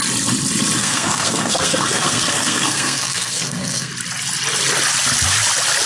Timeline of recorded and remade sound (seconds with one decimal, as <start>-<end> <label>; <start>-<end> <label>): 0.0-0.8 recorded; 0.8-3.9 remade; 3.9-5.9 recorded